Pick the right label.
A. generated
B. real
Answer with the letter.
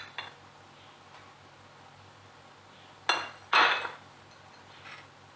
B